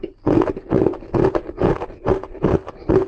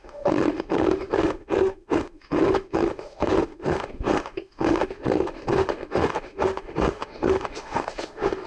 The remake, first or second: second